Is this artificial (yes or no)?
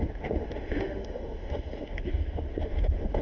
yes